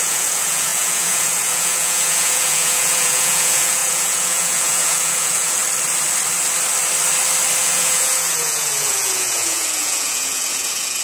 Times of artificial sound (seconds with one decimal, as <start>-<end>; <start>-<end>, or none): 0.0-5.6; 7.6-11.0